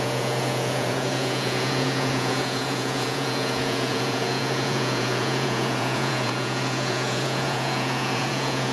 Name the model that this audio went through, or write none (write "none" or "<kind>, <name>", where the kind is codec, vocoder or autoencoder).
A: vocoder, Vocos